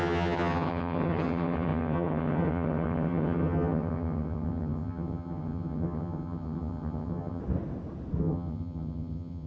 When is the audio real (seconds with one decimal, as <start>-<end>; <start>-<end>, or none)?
7.4-8.2